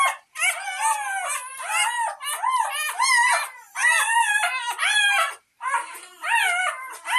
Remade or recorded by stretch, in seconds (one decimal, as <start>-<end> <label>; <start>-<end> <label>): 0.0-3.8 recorded; 3.8-6.7 remade; 6.7-7.2 recorded

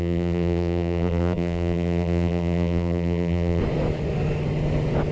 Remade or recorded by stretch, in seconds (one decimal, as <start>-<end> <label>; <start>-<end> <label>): 0.0-3.6 remade; 3.6-5.1 recorded

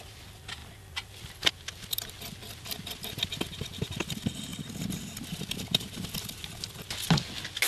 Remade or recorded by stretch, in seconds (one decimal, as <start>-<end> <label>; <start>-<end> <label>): 0.0-7.7 recorded

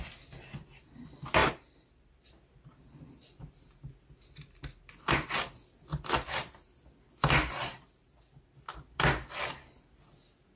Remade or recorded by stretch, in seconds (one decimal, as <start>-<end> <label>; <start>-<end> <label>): 0.0-10.6 recorded

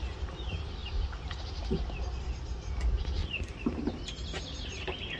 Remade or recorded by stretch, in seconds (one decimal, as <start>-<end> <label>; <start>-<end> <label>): 0.0-3.2 recorded; 3.2-4.0 remade; 4.0-5.2 recorded

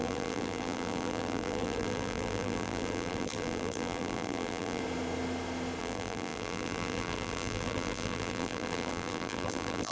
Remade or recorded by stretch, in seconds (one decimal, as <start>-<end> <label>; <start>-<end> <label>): 0.0-4.8 remade; 4.8-5.8 recorded; 5.8-9.9 remade